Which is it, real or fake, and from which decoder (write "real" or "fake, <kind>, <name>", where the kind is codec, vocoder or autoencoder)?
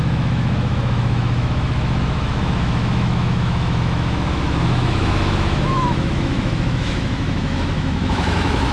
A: fake, autoencoder, DAC-VAE